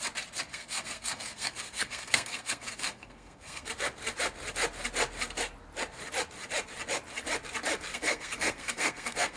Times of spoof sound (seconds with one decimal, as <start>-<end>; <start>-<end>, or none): 0.5-3.7; 7.9-9.4